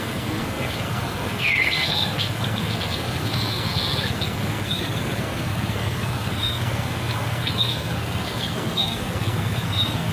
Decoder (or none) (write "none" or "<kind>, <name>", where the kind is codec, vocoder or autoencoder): codec, SNAC